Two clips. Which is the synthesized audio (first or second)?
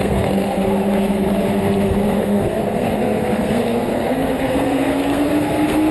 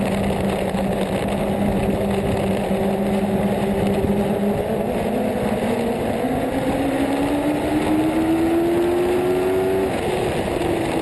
first